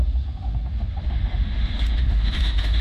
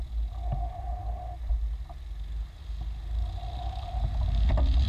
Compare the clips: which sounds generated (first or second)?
first